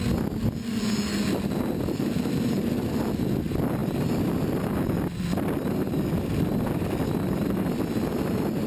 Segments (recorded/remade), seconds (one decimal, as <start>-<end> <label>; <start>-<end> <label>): 0.0-8.7 recorded